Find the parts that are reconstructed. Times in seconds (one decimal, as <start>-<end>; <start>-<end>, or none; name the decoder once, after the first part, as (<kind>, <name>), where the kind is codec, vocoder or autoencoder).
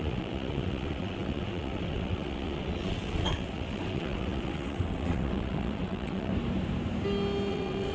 0.0-6.3 (vocoder, WaveNeXt); 7.5-7.9